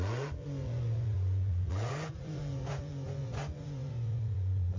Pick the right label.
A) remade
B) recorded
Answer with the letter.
A